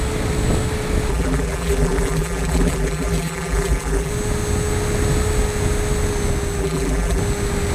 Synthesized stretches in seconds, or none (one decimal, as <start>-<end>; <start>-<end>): 1.1-4.1; 6.6-7.2